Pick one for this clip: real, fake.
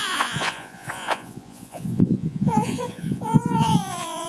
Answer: fake